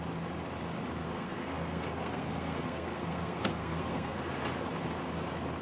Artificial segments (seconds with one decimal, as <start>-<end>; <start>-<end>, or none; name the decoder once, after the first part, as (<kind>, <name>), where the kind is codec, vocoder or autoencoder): 1.0-4.3 (codec, SNAC)